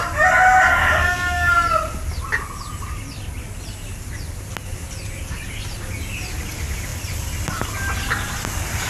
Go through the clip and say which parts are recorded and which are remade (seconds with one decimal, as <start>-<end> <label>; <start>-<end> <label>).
0.0-0.7 recorded; 0.7-1.5 remade; 1.5-8.9 recorded